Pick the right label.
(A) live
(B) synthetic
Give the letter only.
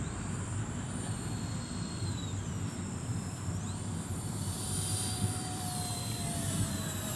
B